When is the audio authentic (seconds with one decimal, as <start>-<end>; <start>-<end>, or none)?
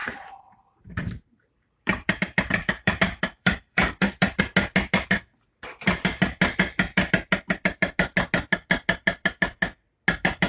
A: 4.4-10.5